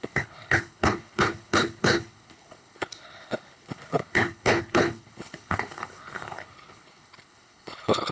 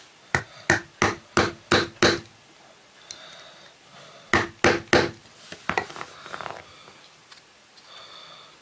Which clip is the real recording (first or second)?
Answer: second